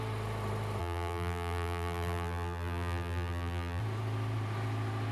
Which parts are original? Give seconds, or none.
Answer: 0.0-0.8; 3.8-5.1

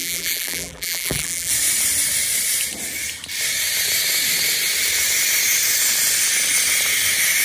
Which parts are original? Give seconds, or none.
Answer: 1.5-7.4

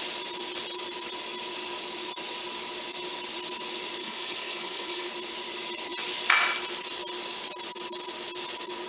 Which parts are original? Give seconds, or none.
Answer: 0.0-4.0; 5.1-8.9

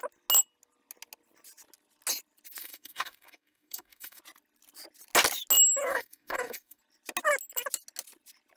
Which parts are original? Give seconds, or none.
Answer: 0.0-2.6; 4.2-5.8; 6.8-8.6

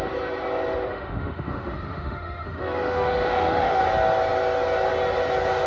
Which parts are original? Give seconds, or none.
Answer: 0.0-0.9; 3.8-5.7